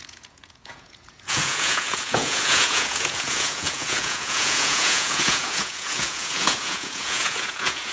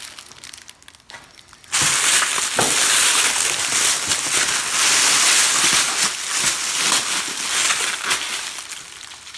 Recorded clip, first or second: second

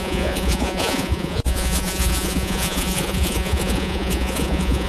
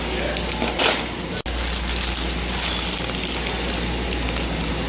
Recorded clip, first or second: second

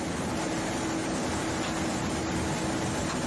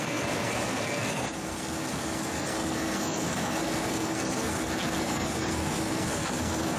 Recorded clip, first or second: first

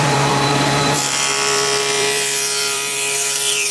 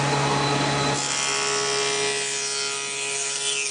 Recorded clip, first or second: second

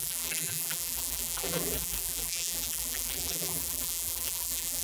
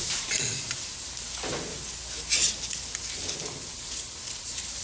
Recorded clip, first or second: second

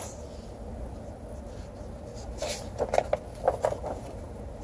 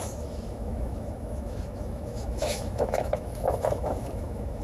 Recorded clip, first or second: first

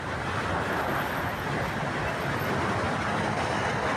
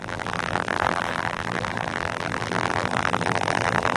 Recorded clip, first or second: first